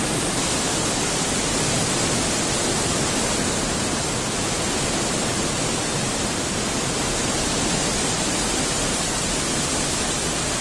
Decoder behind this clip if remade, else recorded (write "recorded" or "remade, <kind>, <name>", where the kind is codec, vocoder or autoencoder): recorded